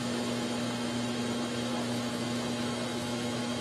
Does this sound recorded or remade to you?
remade